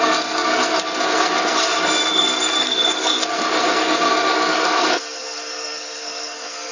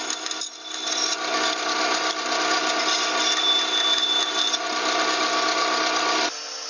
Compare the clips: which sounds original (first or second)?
second